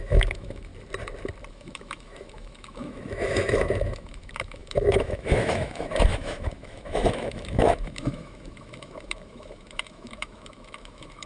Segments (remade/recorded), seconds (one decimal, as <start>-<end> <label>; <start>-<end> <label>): 0.0-0.7 remade; 0.7-1.5 recorded; 1.5-11.3 remade